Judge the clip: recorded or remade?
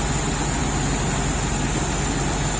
recorded